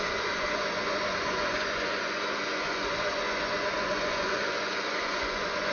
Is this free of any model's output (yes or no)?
no